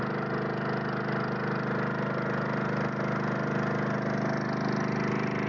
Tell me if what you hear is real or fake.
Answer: real